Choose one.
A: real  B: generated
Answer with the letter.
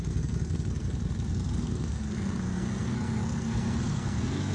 B